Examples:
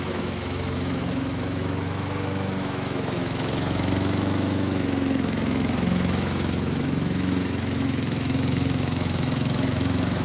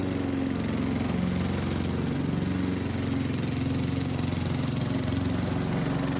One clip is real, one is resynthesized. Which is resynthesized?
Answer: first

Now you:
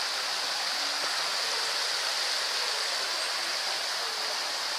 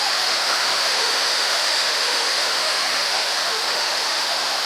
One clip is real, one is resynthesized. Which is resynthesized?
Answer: second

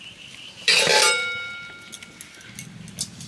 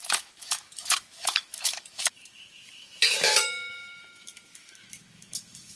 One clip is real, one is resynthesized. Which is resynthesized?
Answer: second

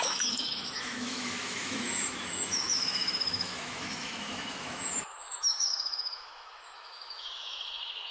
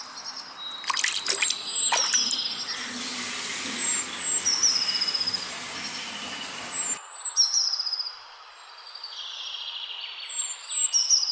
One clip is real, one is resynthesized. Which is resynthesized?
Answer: first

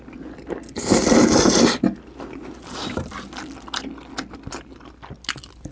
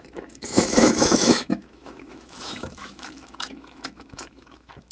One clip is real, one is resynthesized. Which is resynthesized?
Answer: second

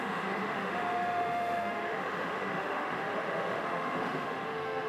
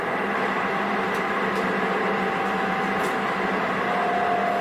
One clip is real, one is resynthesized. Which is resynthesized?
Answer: first